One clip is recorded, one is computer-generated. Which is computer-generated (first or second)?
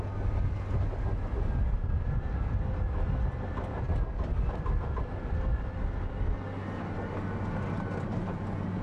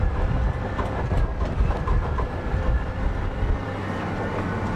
second